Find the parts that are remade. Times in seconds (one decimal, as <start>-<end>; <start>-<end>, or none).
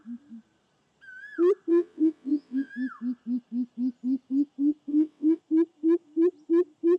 1.7-2.7; 4.9-5.4